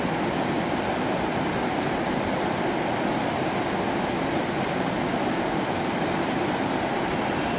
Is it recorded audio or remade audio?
recorded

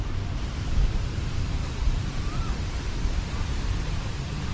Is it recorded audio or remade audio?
remade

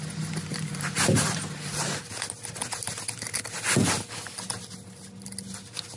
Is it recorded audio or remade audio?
recorded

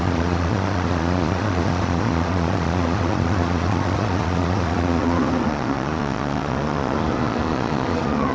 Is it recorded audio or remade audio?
remade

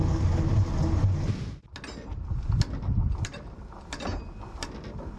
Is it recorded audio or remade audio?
recorded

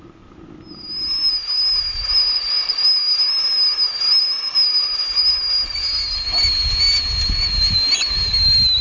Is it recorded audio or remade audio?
recorded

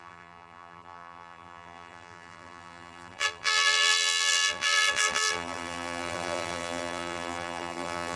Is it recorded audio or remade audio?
remade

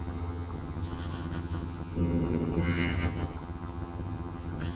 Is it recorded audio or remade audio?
remade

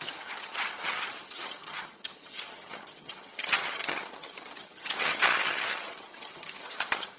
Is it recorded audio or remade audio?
remade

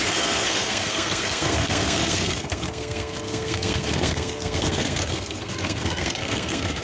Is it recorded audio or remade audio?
remade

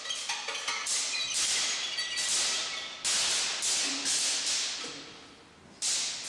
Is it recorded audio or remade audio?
recorded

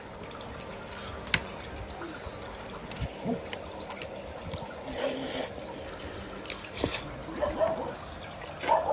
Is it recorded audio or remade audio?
recorded